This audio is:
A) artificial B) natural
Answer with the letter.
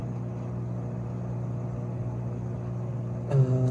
B